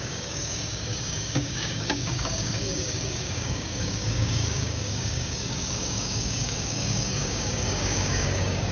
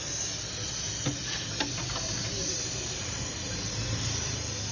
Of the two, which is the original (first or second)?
second